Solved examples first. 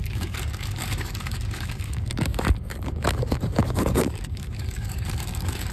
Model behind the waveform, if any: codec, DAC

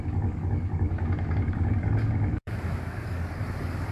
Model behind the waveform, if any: codec, DAC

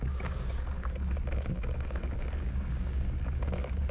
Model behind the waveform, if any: codec, DAC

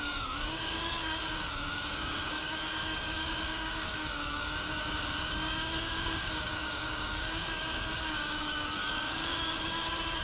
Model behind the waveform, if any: codec, DAC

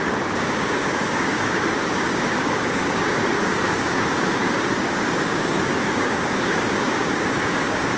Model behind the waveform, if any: codec, DAC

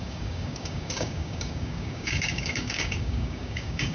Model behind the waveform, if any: codec, DAC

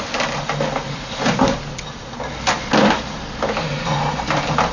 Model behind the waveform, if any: none